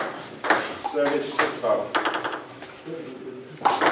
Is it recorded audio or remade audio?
recorded